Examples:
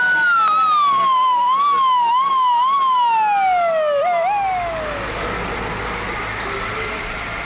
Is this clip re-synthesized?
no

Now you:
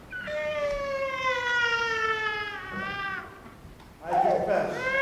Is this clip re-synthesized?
no